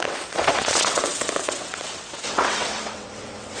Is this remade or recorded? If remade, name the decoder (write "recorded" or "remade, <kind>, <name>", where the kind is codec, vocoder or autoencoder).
remade, vocoder, WaveNeXt